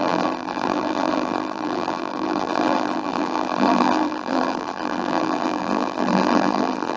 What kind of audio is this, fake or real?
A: fake